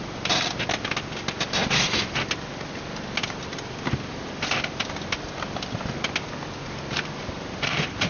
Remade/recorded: recorded